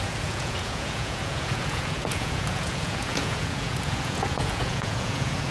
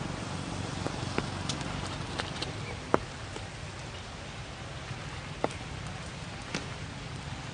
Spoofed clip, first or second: first